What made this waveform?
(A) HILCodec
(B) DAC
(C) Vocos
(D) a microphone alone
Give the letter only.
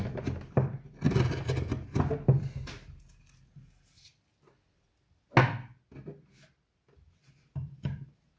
D